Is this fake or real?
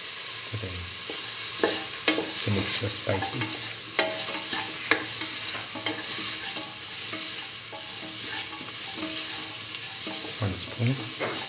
real